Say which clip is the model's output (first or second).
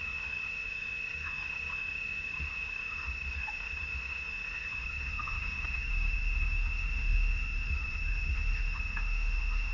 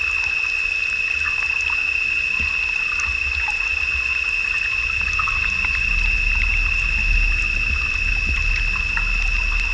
first